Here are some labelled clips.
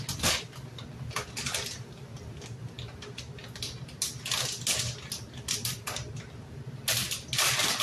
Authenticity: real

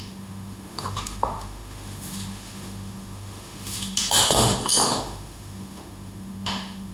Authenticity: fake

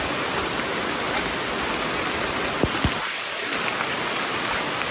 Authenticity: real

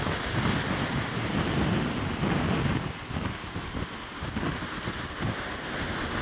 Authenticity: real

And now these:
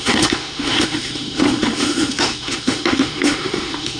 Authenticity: fake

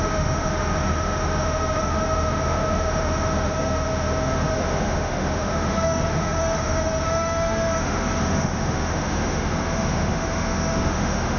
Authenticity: fake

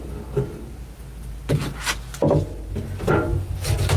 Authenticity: real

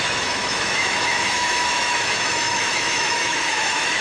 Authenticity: fake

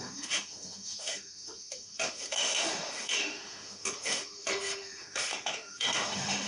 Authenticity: fake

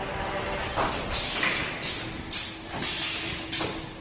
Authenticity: real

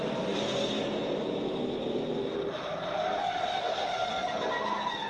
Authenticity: real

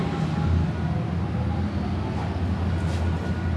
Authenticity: real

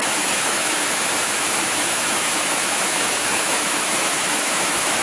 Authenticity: fake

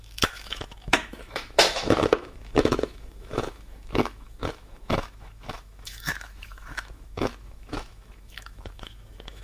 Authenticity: fake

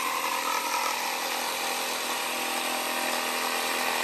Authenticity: real